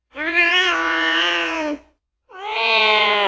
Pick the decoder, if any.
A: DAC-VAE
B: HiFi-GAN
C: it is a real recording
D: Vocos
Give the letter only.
D